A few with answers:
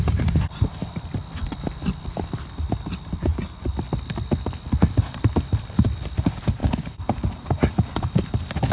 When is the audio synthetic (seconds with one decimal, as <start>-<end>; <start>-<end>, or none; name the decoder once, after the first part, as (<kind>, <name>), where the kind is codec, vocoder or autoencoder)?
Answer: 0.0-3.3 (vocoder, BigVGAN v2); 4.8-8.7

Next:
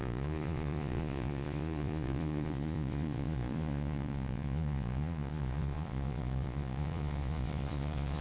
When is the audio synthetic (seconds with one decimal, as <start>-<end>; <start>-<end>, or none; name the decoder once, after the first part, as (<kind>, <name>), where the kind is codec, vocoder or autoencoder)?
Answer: 0.0-8.2 (vocoder, Vocos)

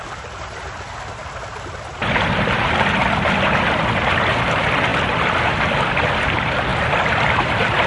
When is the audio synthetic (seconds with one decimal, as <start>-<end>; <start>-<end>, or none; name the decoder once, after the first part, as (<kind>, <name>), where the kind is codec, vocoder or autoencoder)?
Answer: none

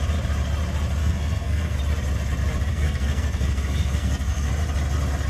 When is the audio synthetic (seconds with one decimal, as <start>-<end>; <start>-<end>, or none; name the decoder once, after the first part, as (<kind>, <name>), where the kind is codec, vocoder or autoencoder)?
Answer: 1.0-1.8 (codec, SNAC); 2.7-4.5